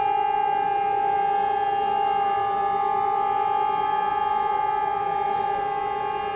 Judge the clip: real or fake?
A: real